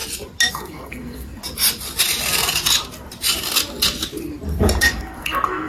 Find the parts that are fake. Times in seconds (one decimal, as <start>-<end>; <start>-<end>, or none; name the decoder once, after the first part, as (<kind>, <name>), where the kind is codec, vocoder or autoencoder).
0.5-1.4 (codec, SNAC); 4.8-5.7